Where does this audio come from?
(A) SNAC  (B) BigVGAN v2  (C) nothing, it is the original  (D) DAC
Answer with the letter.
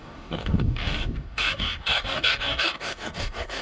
D